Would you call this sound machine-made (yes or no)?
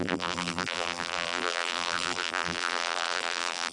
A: yes